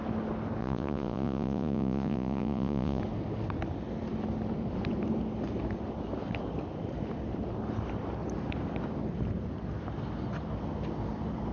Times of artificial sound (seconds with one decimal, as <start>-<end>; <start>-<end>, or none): 0.6-3.0